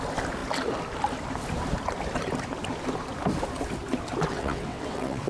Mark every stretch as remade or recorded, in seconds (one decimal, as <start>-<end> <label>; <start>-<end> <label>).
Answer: 0.0-4.3 recorded; 4.3-5.3 remade